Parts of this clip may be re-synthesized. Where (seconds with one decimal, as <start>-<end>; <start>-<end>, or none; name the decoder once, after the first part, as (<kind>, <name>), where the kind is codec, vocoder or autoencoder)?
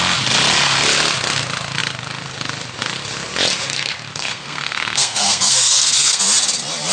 4.1-6.2 (codec, SNAC)